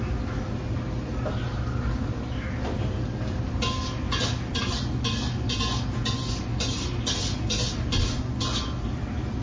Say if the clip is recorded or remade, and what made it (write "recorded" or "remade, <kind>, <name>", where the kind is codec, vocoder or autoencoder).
recorded